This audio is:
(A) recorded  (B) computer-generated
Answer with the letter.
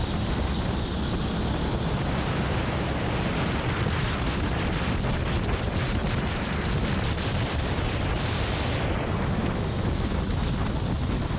A